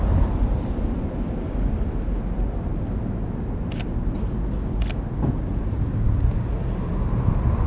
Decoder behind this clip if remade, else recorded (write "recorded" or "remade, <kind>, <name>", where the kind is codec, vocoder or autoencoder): recorded